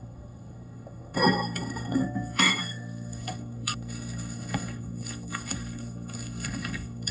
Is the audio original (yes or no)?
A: no